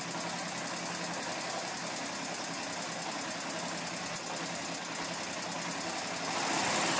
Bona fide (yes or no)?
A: yes